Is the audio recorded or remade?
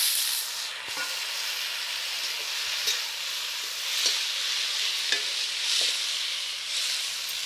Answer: recorded